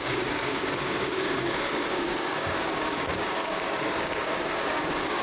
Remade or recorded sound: remade